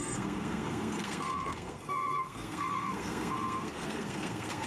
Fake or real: fake